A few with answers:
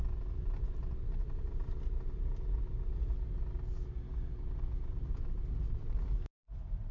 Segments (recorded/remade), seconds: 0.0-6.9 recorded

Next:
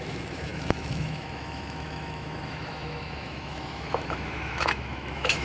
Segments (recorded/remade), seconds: 0.0-5.4 remade

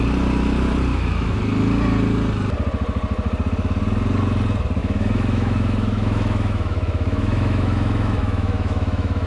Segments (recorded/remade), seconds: 0.0-0.9 recorded; 0.9-1.4 remade; 1.4-4.8 recorded; 4.8-9.3 remade